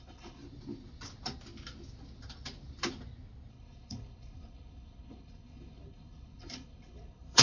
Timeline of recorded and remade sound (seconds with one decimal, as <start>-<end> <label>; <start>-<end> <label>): 0.0-0.4 remade; 0.4-3.5 recorded; 3.5-7.4 remade